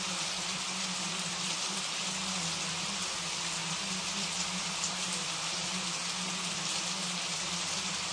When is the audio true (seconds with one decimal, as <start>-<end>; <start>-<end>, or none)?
0.0-8.1